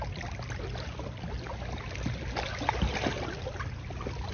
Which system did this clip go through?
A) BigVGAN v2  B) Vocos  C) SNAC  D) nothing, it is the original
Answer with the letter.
D